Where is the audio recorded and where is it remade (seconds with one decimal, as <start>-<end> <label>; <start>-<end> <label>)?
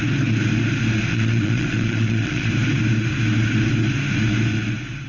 0.0-1.1 recorded; 1.1-2.5 remade; 2.5-5.1 recorded